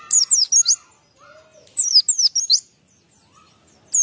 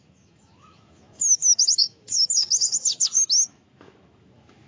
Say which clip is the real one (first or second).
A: first